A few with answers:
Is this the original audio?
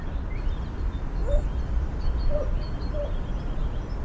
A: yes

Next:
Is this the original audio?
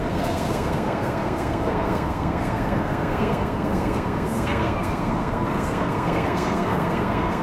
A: no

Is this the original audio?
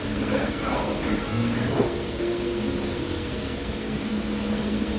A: no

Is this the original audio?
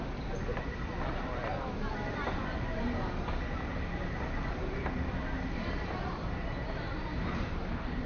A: yes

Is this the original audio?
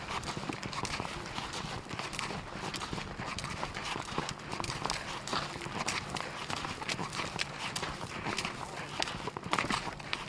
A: yes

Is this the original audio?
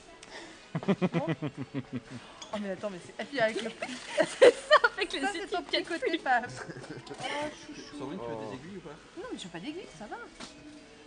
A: yes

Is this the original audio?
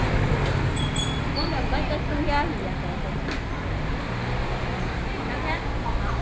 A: yes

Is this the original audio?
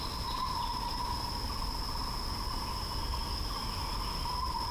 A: yes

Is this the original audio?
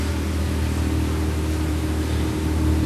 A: yes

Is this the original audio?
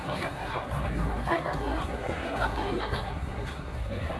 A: no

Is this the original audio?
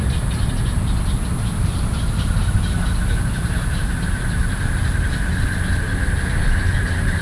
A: yes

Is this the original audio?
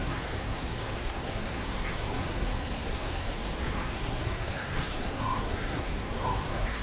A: no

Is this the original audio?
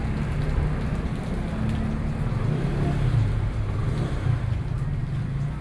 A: yes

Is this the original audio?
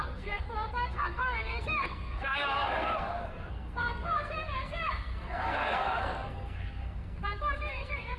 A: no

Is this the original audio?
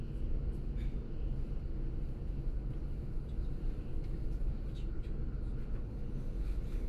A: yes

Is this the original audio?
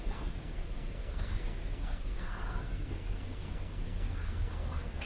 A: no